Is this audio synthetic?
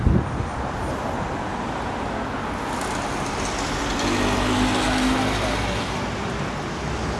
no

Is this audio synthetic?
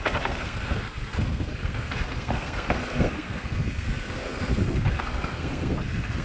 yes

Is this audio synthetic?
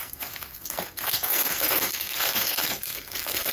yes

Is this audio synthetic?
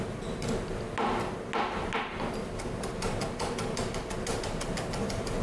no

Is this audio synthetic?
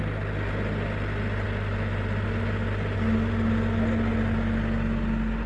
no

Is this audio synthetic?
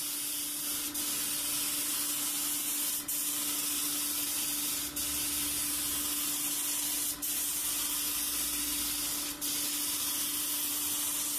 no